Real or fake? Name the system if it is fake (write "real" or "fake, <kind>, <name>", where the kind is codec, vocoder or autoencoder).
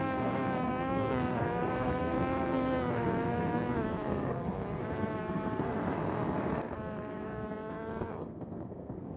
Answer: fake, codec, SNAC